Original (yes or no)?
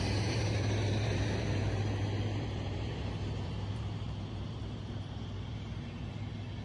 no